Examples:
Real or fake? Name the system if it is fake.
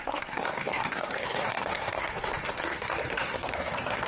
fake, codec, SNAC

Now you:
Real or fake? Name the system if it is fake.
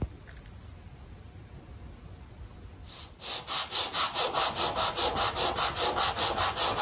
real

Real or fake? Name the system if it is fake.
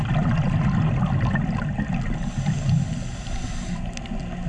real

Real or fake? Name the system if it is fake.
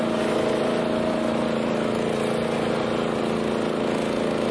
real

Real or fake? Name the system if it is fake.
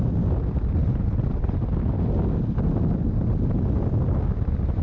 real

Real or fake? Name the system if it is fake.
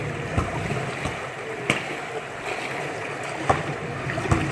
real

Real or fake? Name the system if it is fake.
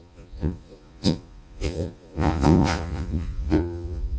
fake, vocoder, Vocos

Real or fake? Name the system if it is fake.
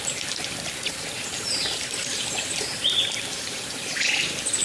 fake, vocoder, BigVGAN v2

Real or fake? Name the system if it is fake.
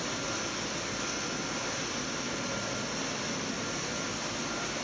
real